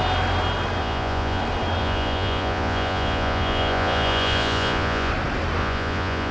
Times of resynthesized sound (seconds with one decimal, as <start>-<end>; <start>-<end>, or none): 0.8-1.4; 1.8-5.1; 5.6-6.3